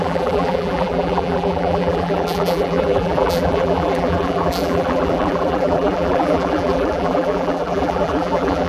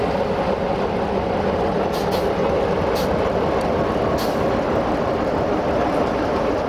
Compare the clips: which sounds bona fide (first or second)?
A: second